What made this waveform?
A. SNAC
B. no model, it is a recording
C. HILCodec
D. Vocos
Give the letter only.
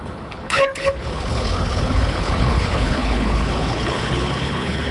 C